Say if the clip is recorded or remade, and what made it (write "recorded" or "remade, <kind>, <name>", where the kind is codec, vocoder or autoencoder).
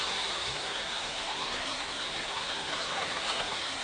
remade, codec, SNAC